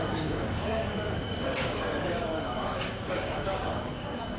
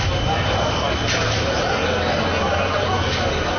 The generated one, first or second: first